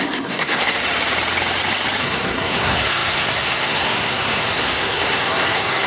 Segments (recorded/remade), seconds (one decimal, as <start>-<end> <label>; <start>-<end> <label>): 0.0-0.8 remade; 0.8-2.0 recorded; 2.0-5.9 remade